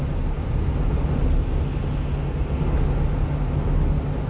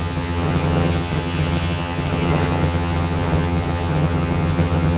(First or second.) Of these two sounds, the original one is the first